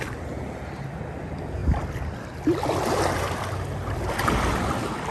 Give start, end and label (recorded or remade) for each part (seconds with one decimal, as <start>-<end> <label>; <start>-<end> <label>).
0.0-5.1 recorded